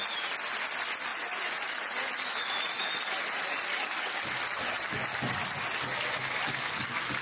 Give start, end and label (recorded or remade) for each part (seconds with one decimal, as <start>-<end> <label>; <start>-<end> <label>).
0.0-7.2 recorded